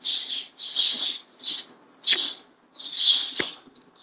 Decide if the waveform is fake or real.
real